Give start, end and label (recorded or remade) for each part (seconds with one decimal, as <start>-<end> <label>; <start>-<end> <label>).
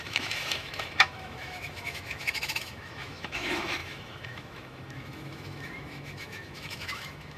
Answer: 0.0-7.4 remade